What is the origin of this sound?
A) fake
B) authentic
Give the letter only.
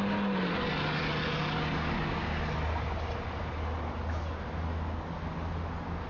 B